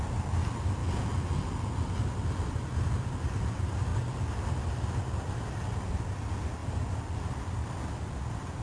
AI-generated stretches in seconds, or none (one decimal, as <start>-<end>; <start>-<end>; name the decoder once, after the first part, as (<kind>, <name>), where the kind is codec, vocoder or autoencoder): none